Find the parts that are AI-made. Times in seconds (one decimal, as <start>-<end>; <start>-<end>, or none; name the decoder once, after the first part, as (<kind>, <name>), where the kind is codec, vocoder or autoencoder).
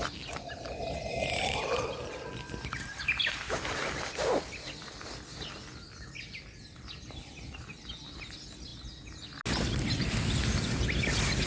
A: none